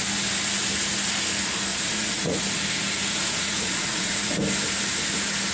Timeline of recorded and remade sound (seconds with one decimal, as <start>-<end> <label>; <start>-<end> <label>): 0.0-1.7 recorded; 1.7-2.4 remade; 2.4-3.0 recorded; 3.0-4.4 remade; 4.4-5.5 recorded